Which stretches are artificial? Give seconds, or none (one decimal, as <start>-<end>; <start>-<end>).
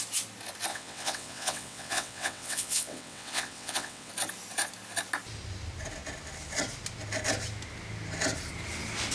0.7-4.1